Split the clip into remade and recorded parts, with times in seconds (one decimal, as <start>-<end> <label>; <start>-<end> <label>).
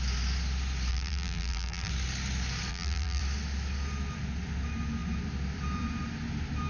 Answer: 0.0-0.9 recorded; 0.9-1.9 remade; 1.9-2.7 recorded; 2.7-3.2 remade; 3.2-6.7 recorded